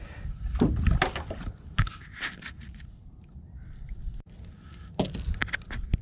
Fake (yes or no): no